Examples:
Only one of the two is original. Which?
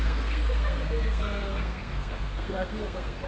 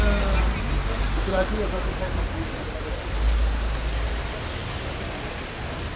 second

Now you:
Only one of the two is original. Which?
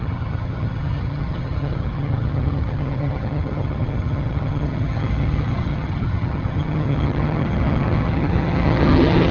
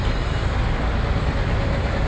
second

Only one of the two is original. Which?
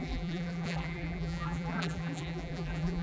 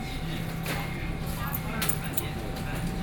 second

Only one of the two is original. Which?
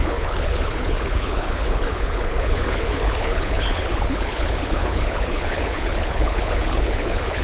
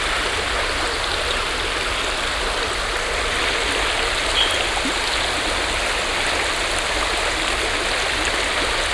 second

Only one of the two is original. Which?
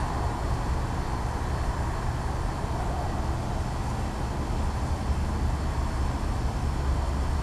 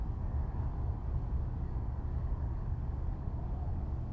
first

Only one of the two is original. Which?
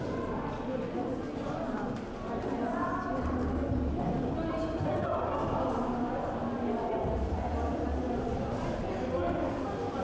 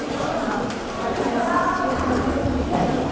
first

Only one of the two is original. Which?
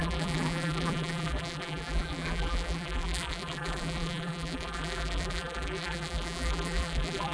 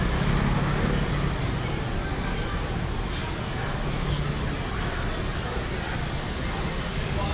second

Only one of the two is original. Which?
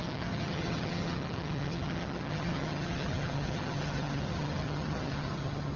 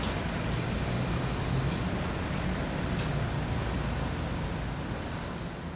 second